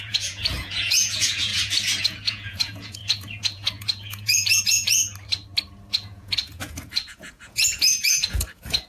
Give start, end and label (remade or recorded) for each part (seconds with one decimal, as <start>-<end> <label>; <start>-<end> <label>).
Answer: 0.0-1.5 remade; 1.5-2.0 recorded; 2.0-5.0 remade; 5.0-5.9 recorded; 5.9-8.9 remade